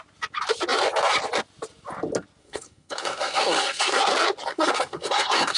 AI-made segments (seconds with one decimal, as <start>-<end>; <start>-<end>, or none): 2.4-4.1; 4.5-5.6